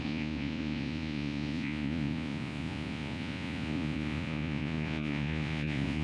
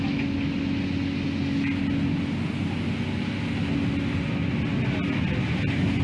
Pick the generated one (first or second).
first